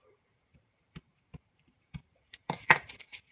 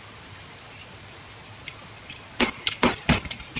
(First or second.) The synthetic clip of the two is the first